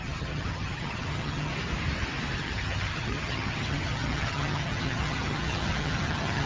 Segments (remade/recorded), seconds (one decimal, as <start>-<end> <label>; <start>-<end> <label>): 0.0-1.5 remade; 1.5-2.4 recorded; 2.4-6.5 remade